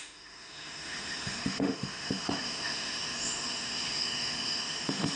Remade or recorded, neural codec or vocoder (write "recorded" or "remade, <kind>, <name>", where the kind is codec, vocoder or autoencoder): remade, autoencoder, DAC-VAE